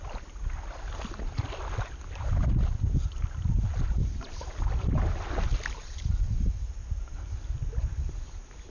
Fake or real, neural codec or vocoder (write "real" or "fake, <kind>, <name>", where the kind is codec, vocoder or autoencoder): real